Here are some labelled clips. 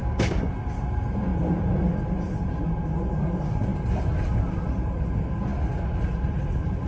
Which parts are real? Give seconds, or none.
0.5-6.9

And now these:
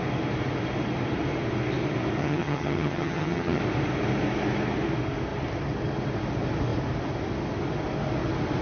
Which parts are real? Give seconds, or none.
0.0-2.2; 3.6-8.6

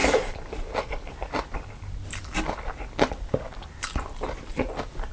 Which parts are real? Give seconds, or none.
0.0-5.1